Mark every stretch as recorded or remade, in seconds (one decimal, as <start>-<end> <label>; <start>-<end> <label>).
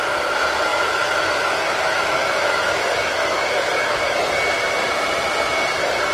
0.0-0.7 recorded; 0.7-4.2 remade; 4.2-6.1 recorded